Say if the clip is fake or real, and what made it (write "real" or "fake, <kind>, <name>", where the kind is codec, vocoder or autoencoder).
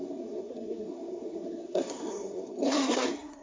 fake, codec, SNAC